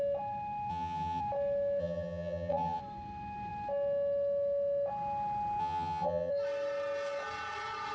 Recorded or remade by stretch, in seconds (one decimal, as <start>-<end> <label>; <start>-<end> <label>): 0.0-0.7 recorded; 0.7-1.2 remade; 1.2-1.8 recorded; 1.8-2.8 remade; 2.8-5.6 recorded; 5.6-6.3 remade; 6.3-7.9 recorded